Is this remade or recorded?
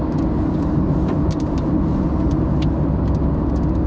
recorded